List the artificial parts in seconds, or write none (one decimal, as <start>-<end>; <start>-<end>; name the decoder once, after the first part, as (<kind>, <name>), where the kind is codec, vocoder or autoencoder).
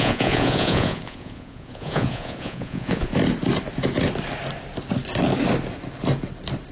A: 0.0-3.1 (vocoder, Vocos)